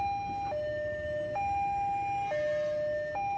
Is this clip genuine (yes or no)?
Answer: yes